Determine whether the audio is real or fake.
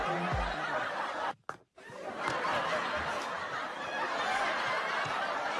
real